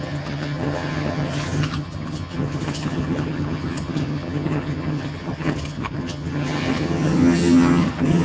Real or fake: fake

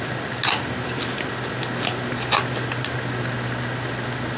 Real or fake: real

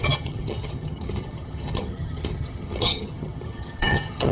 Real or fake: fake